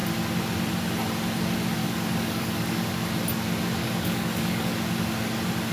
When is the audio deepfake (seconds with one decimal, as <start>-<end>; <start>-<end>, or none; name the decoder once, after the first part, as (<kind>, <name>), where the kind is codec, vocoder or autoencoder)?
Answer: 1.8-2.9 (codec, DAC); 3.8-4.7